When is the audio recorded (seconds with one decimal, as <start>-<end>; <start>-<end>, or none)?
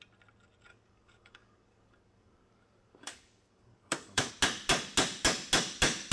0.0-0.7; 4.3-6.1